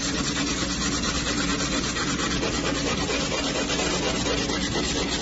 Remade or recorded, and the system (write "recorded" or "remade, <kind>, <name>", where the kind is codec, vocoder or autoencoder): recorded